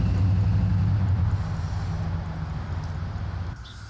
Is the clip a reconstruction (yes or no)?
no